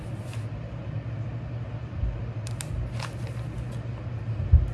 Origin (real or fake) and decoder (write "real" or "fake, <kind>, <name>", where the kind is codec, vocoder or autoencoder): real